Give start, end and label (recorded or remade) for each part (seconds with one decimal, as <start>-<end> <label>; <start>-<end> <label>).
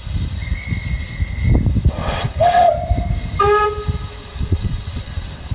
0.0-2.0 recorded; 2.0-2.7 remade; 2.7-4.2 recorded; 4.2-5.5 remade